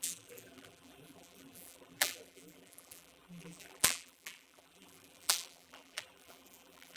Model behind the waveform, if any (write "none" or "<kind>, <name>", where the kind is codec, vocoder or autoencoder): vocoder, BigVGAN v2